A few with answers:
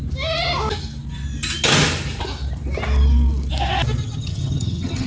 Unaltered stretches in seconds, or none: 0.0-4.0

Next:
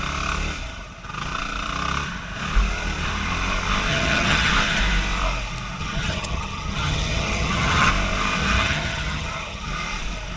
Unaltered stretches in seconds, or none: 0.0-3.9; 4.5-5.8; 7.9-8.4; 9.7-10.4

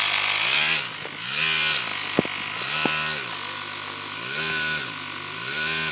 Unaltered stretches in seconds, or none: 0.0-5.9

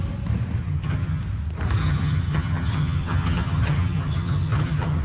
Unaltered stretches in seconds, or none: 0.0-0.6; 1.2-1.8

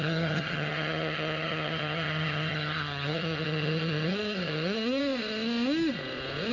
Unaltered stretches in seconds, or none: 5.0-6.5

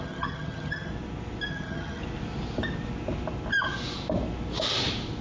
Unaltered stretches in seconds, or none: 0.9-1.5; 2.0-5.2

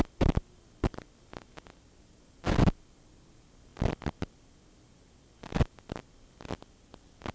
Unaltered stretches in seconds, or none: 0.0-7.3